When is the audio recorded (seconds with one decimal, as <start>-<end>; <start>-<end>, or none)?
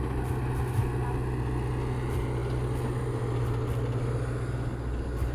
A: 0.0-5.3